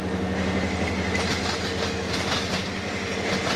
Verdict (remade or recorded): recorded